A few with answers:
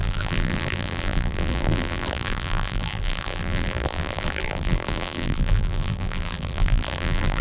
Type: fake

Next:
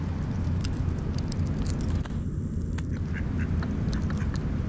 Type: real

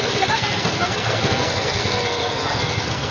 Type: fake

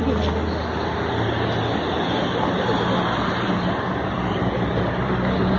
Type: real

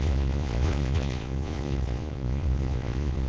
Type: fake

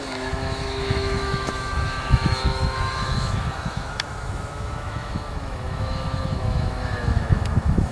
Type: fake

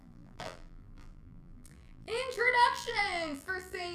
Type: fake